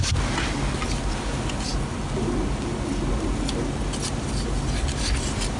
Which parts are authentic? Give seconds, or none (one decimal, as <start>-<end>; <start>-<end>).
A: 0.0-5.6

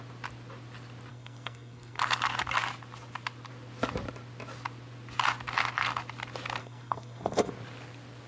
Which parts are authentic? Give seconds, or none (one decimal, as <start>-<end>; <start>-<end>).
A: 0.0-1.1; 2.0-6.6; 7.5-8.3

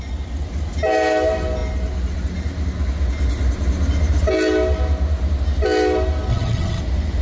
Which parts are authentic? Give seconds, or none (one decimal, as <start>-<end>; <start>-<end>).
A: 0.0-6.3; 6.8-7.2

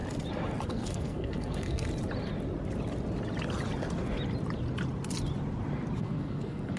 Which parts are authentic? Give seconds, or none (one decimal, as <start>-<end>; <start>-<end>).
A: 0.0-0.7; 1.9-6.0